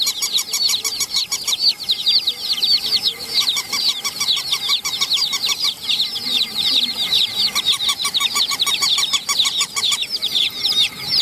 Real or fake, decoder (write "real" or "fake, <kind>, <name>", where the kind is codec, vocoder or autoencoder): fake, vocoder, BigVGAN v2